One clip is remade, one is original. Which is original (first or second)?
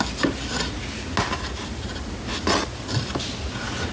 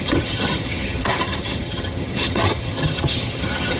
first